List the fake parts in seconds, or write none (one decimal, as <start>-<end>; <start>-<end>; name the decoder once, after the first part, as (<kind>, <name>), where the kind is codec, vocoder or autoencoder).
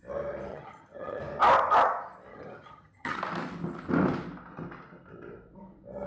0.5-1.2 (vocoder, HiFi-GAN); 2.3-3.2